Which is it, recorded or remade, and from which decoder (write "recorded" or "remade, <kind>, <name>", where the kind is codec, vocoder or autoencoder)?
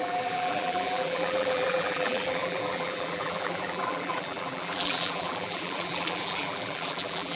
remade, vocoder, BigVGAN v2